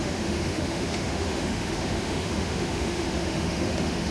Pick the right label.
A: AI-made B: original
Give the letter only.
A